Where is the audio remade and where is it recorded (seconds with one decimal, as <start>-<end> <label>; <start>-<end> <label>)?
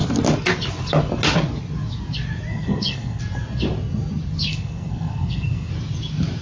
0.0-2.5 recorded; 2.5-3.2 remade; 3.2-4.5 recorded; 4.5-5.7 remade; 5.7-6.4 recorded